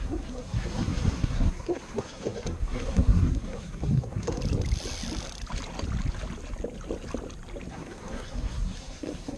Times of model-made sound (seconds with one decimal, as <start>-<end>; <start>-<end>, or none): 0.0-4.4; 7.7-9.4